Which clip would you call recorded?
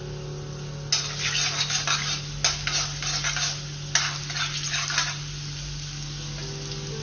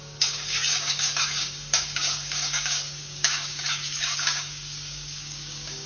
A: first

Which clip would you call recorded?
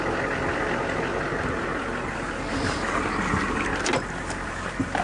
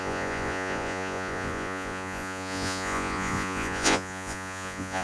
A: first